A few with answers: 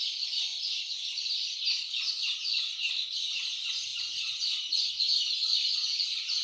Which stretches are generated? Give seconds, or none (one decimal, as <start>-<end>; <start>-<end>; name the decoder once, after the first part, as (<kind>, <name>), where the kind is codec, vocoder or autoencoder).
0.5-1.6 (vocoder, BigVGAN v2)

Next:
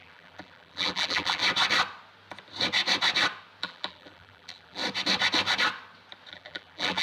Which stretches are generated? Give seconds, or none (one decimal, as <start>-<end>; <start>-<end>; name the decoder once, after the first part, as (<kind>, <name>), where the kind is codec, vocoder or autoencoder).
0.0-1.4 (vocoder, BigVGAN v2); 3.6-4.8; 6.3-7.0

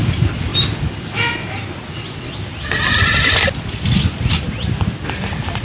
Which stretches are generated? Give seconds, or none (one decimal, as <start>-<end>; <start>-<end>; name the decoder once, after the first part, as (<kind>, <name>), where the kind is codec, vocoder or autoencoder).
none